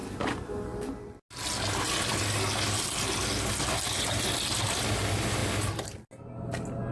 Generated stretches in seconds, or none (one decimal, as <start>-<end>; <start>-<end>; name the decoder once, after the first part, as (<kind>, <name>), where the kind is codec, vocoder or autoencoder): none